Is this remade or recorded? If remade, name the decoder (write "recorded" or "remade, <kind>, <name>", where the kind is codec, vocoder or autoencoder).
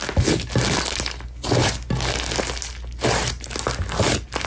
recorded